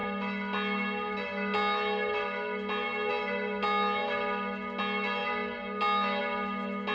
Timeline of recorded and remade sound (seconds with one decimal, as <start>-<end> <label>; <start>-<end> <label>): 0.0-6.9 recorded

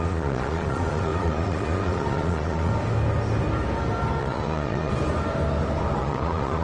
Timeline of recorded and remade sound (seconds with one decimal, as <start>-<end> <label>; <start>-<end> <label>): 0.0-2.7 remade; 2.7-4.2 recorded; 4.2-4.9 remade; 4.9-6.0 recorded; 6.0-6.6 remade

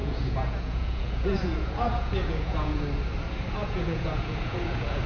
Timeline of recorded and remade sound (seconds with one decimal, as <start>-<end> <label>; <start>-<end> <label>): 0.0-2.8 remade; 2.8-3.6 recorded; 3.6-5.1 remade

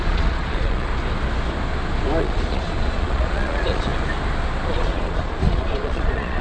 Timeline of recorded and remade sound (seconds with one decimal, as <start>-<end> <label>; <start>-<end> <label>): 0.0-0.9 remade; 0.9-2.2 recorded; 2.2-3.9 remade; 3.9-4.7 recorded; 4.7-6.4 remade

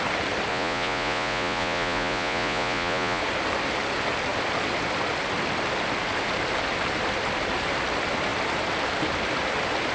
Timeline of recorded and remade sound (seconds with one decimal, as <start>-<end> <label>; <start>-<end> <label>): 0.0-0.5 recorded; 0.5-3.2 remade; 3.2-9.9 recorded

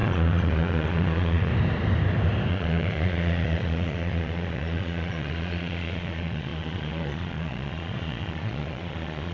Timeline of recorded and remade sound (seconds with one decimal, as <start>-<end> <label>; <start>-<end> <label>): 0.0-1.5 remade; 1.5-2.5 recorded; 2.5-9.3 remade